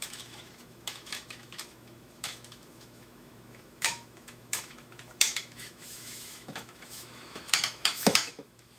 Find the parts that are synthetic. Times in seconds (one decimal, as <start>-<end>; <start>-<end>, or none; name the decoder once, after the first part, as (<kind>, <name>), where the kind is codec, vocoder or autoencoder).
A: 0.0-8.8 (autoencoder, DAC-VAE)